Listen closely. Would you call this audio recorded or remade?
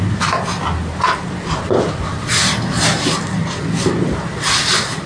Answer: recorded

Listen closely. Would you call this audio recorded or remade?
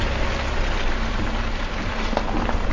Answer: remade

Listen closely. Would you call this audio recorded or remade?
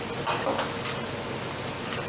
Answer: recorded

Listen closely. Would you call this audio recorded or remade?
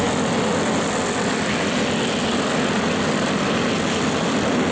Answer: recorded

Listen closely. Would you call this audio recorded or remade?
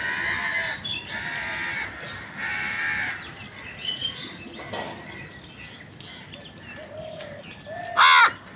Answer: recorded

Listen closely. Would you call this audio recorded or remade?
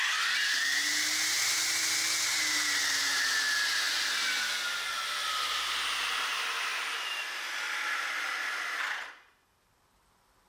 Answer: recorded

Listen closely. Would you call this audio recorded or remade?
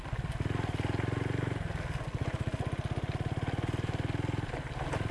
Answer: recorded